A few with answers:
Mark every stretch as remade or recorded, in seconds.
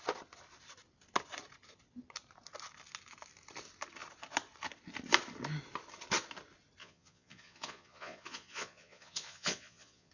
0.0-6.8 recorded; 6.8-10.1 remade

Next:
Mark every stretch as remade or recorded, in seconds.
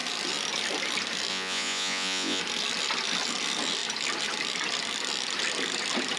0.0-1.3 recorded; 1.3-2.4 remade; 2.4-6.2 recorded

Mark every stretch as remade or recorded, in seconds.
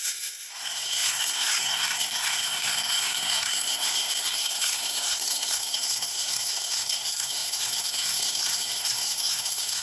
0.0-9.8 remade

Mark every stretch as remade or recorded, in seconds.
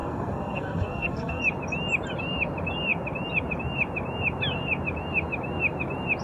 0.0-1.4 remade; 1.4-6.2 recorded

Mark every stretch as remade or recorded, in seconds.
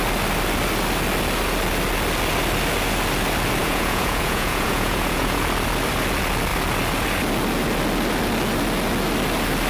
0.0-3.6 recorded; 3.6-5.4 remade; 5.4-9.7 recorded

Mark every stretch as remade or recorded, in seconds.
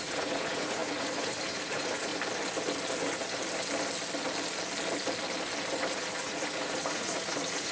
0.0-2.1 remade; 2.1-5.9 recorded; 5.9-7.7 remade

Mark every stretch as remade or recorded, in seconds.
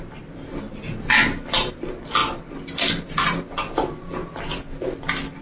0.0-5.4 recorded